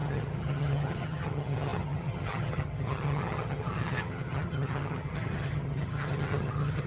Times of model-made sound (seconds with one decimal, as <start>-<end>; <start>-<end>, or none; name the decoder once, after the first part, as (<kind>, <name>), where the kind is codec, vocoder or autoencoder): 0.0-6.9 (vocoder, HiFi-GAN)